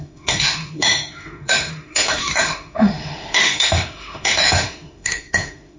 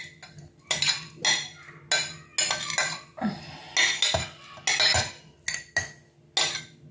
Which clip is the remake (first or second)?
first